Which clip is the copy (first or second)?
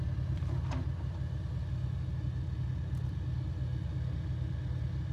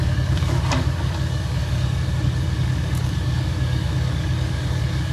second